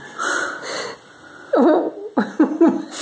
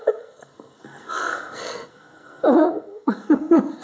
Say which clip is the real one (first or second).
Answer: first